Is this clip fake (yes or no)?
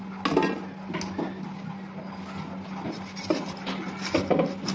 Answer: no